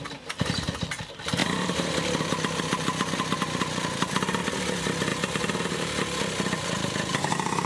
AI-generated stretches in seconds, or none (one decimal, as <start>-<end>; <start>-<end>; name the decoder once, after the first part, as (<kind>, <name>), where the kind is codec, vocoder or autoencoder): none